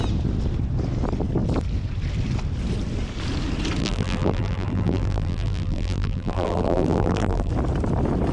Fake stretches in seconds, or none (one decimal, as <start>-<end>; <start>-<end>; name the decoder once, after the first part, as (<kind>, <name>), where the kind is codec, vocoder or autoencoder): 3.8-7.5 (vocoder, BigVGAN v2)